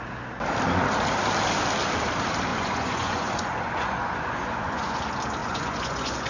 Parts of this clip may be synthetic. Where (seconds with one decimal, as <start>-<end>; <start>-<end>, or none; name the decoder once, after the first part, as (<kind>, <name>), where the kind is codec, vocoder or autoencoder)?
2.5-5.0 (vocoder, Vocos); 5.4-6.3